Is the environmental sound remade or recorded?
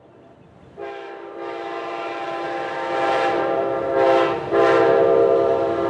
recorded